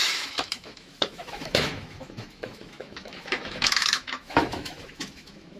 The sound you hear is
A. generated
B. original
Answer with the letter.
A